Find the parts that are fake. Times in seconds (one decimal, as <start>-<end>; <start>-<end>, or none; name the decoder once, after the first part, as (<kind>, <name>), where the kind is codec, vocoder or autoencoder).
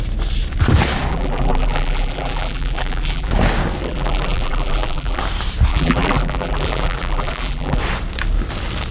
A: 1.1-3.3 (vocoder, BigVGAN v2); 3.8-5.2; 5.7-7.8